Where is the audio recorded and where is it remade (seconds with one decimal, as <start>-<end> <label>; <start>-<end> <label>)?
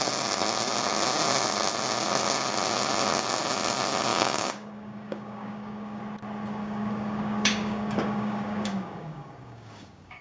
0.0-4.1 recorded; 4.1-6.0 remade; 6.0-6.6 recorded; 6.6-10.2 remade